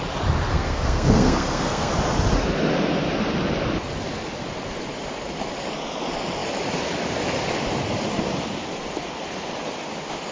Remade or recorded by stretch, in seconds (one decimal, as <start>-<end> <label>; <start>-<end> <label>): 0.0-0.5 recorded; 0.5-1.9 remade; 1.9-10.3 recorded